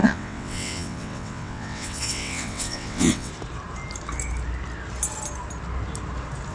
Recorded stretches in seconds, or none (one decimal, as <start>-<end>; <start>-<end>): 3.3-6.5